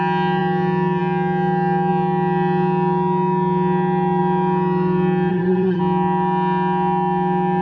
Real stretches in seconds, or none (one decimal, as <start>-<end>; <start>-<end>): 0.0-5.3; 5.8-7.6